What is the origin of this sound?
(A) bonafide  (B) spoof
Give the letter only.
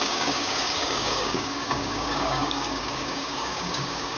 B